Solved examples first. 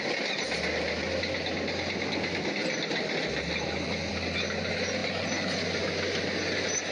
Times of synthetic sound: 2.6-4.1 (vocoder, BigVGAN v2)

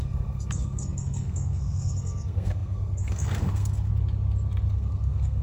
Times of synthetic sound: 0.0-3.9 (codec, SNAC); 4.7-5.4

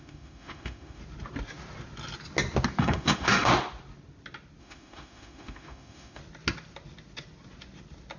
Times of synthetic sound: 0.0-1.0 (autoencoder, DAC-VAE); 2.8-3.5; 4.6-6.2

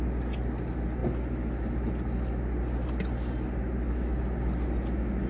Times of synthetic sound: none

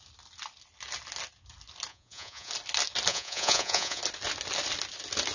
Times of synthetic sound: 1.9-2.5 (vocoder, Vocos); 3.1-4.0

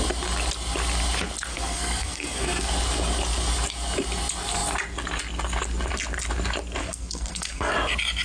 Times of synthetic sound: 1.5-2.7 (codec, SNAC); 6.8-7.7

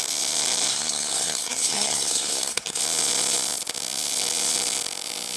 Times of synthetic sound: 0.7-2.8 (codec, SNAC)